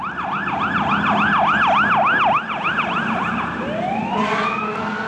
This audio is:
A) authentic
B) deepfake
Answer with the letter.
A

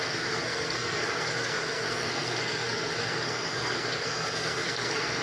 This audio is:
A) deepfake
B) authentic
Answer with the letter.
A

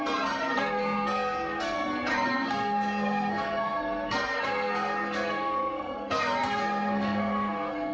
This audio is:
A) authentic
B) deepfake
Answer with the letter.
B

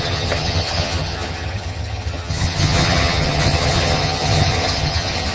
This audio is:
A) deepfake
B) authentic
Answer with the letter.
A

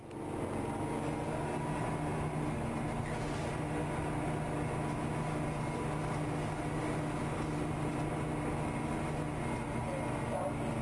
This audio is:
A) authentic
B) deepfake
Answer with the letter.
A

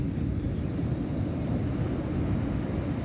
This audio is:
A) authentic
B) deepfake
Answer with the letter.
A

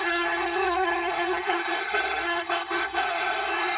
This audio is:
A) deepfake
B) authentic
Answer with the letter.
A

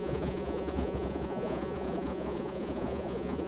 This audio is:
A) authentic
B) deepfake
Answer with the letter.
B